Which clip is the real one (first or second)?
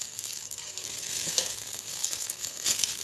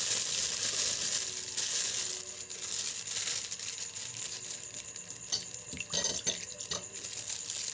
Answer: second